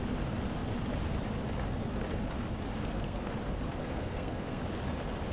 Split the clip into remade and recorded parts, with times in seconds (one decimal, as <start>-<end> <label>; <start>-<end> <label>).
0.0-2.7 recorded; 2.7-3.3 remade; 3.3-3.8 recorded; 3.8-4.6 remade; 4.6-5.3 recorded